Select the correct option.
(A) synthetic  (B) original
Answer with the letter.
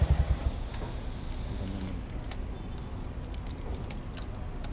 B